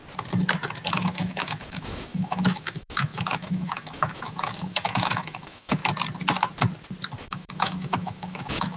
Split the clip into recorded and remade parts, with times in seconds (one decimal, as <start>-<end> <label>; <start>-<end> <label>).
0.0-0.9 recorded; 0.9-5.8 remade; 5.8-7.2 recorded; 7.2-8.8 remade